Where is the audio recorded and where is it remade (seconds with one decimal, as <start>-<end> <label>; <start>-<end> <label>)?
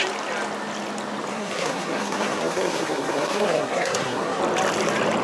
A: 0.0-1.3 recorded; 1.3-4.4 remade; 4.4-5.2 recorded